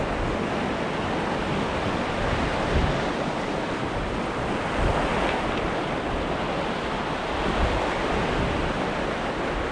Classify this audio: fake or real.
real